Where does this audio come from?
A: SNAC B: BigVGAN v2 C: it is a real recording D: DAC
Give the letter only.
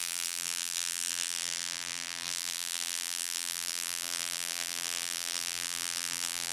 B